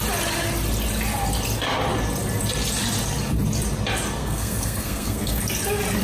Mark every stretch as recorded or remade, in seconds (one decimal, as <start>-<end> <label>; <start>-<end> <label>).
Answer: 0.0-4.2 recorded; 4.2-5.4 remade; 5.4-6.0 recorded

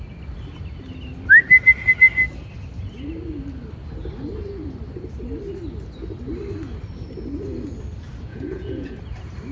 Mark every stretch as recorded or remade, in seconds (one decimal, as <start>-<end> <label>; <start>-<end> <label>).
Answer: 0.0-8.3 recorded; 8.3-9.0 remade; 9.0-9.5 recorded

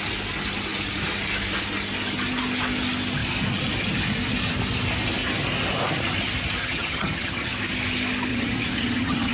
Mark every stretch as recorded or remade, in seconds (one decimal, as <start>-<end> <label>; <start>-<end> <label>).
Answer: 0.0-6.6 recorded; 6.6-7.6 remade; 7.6-8.3 recorded; 8.3-9.3 remade

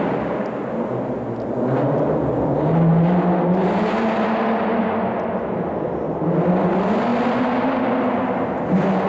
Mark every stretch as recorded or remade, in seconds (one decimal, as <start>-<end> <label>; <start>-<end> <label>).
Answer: 0.0-9.1 recorded

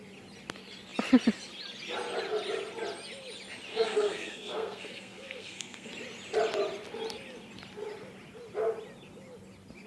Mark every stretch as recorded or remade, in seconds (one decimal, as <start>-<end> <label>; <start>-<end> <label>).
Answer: 0.0-3.7 recorded; 3.7-5.9 remade; 5.9-9.9 recorded

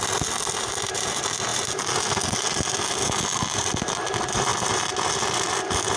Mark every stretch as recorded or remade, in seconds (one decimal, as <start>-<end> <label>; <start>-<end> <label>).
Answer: 0.0-6.0 recorded